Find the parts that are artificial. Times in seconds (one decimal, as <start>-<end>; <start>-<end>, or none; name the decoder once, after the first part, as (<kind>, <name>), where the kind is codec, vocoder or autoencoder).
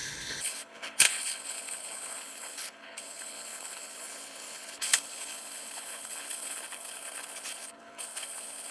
0.0-8.7 (codec, HILCodec)